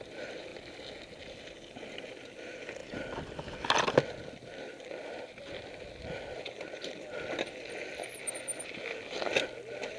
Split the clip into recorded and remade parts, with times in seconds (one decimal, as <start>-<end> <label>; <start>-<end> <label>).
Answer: 0.0-10.0 recorded